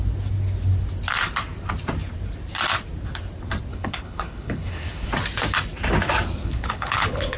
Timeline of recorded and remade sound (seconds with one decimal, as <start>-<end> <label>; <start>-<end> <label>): 0.0-3.7 recorded; 3.7-5.1 remade; 5.1-6.4 recorded; 6.4-7.4 remade